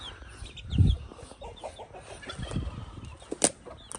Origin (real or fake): real